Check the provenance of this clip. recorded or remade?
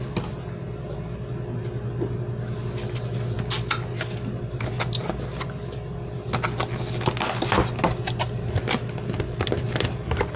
recorded